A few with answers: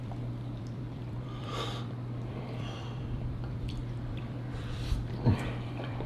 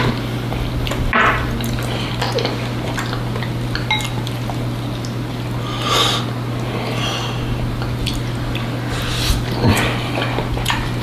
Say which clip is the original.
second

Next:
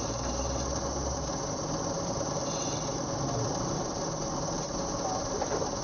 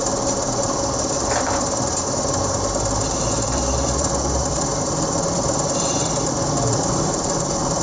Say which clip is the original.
first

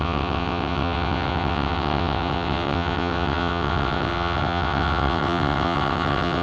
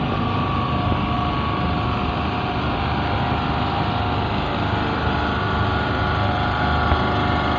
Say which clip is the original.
second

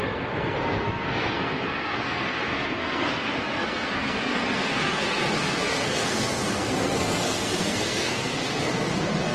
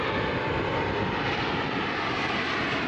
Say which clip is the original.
second